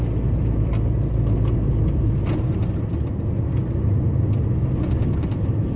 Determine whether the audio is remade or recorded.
recorded